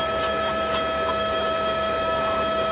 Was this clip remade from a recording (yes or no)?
yes